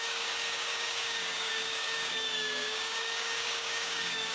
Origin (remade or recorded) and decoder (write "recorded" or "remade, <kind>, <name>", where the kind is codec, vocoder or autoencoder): remade, codec, DAC